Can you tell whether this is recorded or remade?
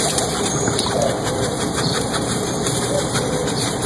remade